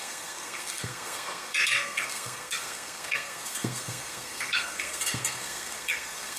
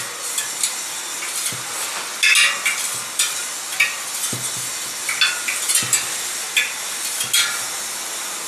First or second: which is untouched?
second